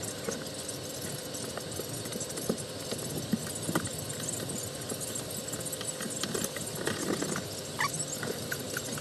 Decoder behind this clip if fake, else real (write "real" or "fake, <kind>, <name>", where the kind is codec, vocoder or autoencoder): real